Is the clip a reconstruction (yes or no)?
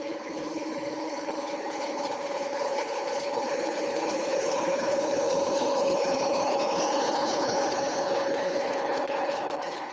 yes